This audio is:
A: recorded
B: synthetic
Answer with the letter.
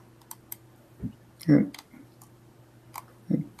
B